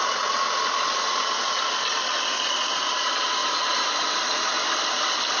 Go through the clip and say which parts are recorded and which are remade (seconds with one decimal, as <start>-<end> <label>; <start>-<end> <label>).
0.0-3.4 recorded; 3.4-4.6 remade; 4.6-5.4 recorded